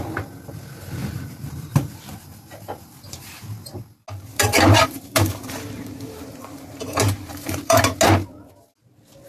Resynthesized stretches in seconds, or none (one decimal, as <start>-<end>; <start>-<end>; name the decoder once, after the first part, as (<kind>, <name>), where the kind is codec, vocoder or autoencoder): 1.0-3.8 (vocoder, BigVGAN v2); 4.3-7.8